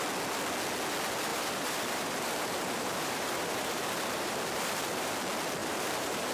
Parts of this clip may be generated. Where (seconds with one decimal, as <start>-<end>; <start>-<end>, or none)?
1.3-5.1; 5.6-6.3